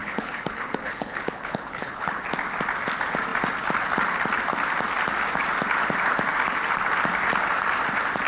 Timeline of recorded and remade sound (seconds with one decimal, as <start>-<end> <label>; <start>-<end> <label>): 0.0-2.2 remade; 2.2-8.3 recorded